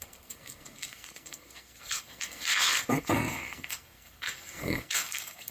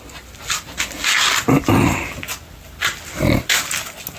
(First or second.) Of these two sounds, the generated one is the first